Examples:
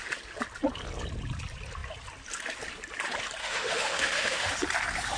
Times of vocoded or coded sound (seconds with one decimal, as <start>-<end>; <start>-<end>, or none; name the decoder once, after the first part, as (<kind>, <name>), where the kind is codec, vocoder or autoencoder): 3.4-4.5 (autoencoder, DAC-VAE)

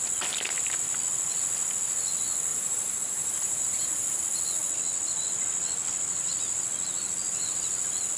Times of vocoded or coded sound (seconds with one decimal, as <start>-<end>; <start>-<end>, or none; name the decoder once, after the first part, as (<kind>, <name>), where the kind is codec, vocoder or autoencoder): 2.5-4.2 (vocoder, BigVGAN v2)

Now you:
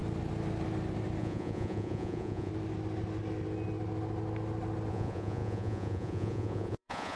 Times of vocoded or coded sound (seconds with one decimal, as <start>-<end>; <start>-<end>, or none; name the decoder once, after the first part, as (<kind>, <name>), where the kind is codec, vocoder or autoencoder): 1.2-2.5 (vocoder, Vocos); 4.9-7.2

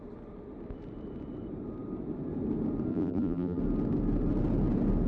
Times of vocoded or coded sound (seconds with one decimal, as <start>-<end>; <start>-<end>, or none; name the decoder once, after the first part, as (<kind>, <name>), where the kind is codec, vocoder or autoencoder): 2.9-3.6 (vocoder, BigVGAN v2)

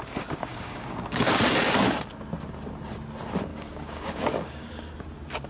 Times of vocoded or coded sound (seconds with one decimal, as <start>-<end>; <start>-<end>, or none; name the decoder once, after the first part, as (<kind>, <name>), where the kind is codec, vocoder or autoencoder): 0.5-1.4 (codec, DAC); 3.5-4.9

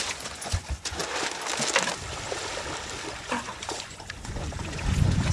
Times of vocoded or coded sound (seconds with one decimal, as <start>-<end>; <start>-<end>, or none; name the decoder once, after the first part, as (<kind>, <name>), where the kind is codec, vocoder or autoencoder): 0.0-1.0 (vocoder, Vocos); 3.2-5.3

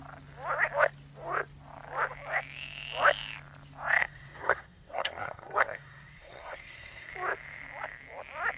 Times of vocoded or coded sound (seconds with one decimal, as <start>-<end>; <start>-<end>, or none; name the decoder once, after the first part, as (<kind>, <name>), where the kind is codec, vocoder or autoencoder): 4.0-7.1 (codec, SNAC)